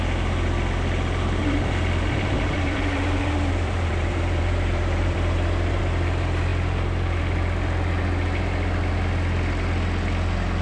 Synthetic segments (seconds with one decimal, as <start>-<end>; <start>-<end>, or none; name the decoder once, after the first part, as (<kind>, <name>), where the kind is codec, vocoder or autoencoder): 1.4-5.8 (vocoder, BigVGAN v2)